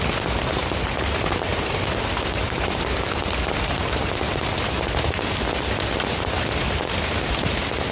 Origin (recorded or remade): recorded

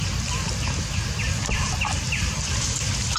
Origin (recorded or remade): recorded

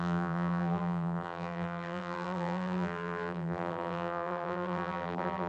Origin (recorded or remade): remade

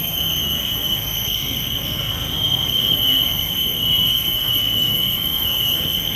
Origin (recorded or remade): remade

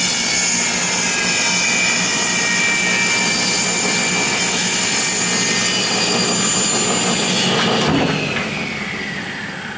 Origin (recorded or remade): recorded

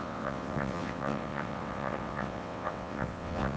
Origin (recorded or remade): remade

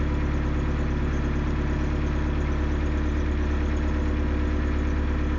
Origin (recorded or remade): recorded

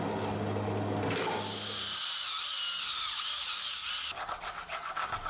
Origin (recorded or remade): recorded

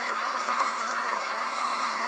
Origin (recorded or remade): remade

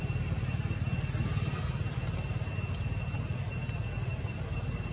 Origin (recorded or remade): recorded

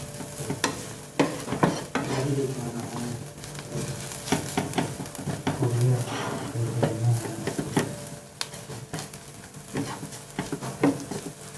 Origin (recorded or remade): recorded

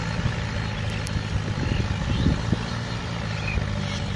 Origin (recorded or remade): recorded